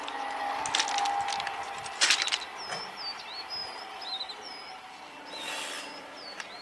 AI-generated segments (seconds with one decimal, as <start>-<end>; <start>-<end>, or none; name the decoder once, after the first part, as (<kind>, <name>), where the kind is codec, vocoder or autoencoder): none